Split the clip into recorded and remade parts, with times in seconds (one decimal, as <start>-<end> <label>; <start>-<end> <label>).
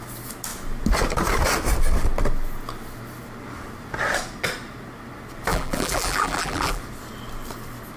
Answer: 0.0-5.5 recorded; 5.5-6.8 remade; 6.8-8.0 recorded